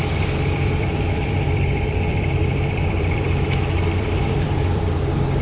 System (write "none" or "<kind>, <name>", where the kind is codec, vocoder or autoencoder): vocoder, BigVGAN v2